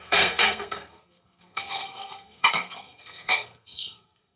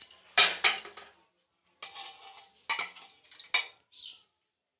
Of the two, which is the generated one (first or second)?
first